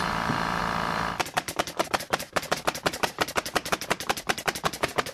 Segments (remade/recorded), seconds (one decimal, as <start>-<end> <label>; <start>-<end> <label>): 0.0-0.6 remade; 0.6-1.3 recorded; 1.3-5.1 remade